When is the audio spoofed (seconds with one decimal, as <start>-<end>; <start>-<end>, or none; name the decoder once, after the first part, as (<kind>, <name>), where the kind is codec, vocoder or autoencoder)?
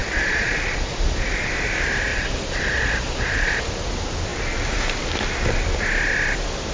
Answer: 0.0-1.5 (vocoder, Vocos); 2.1-3.6